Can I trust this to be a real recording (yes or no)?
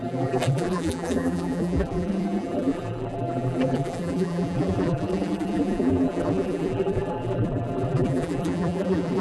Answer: no